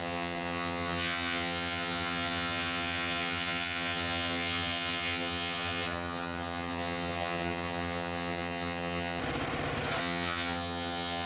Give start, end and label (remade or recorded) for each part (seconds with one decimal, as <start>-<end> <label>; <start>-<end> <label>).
0.0-9.2 remade; 9.2-10.0 recorded; 10.0-11.3 remade